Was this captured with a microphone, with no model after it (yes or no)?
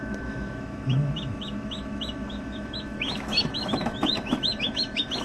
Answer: no